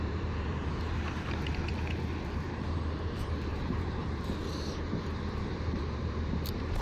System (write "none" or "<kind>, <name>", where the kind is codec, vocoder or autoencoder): vocoder, BigVGAN v2